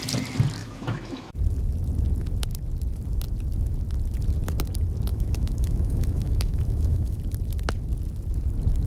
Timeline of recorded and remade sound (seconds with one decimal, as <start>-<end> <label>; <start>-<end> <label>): 0.0-0.6 recorded; 0.6-1.3 remade; 1.3-5.1 recorded; 5.1-7.2 remade; 7.2-8.9 recorded

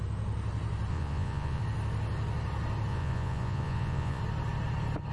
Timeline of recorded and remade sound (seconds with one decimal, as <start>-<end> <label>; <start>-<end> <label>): 0.0-0.9 recorded; 0.9-1.6 remade; 1.6-2.9 recorded; 2.9-4.2 remade; 4.2-5.1 recorded

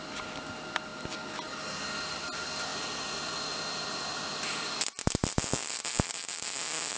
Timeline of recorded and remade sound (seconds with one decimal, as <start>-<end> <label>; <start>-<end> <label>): 0.0-7.0 recorded